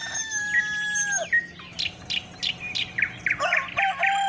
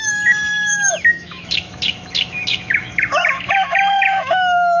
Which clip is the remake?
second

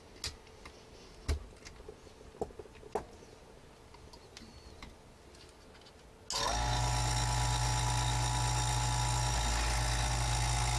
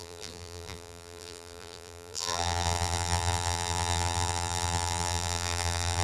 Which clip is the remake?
second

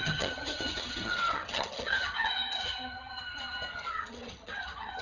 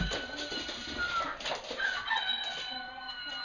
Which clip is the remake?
first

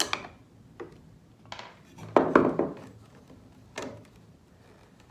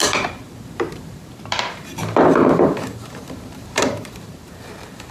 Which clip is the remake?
second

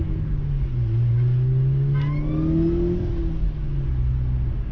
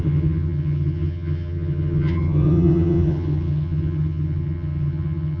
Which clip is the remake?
second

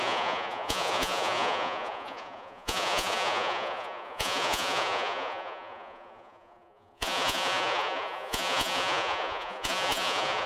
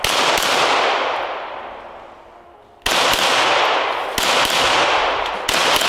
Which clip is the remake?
first